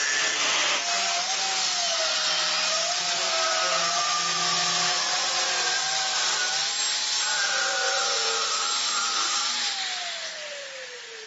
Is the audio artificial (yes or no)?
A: no